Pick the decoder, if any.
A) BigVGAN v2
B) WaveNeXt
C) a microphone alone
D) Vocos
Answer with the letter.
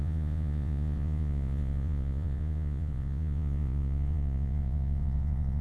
D